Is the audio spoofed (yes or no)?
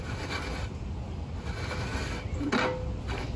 no